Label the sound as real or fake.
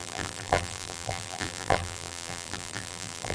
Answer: fake